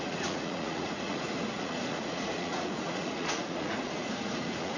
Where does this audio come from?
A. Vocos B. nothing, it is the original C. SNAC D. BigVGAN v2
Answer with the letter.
A